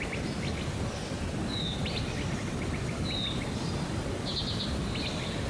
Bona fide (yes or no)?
yes